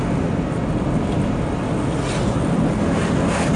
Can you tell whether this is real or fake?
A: real